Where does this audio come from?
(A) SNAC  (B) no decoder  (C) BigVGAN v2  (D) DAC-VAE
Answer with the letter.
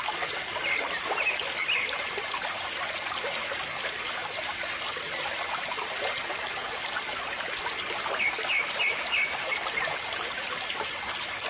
B